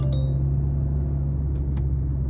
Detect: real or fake real